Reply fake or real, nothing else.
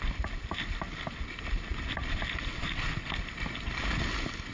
real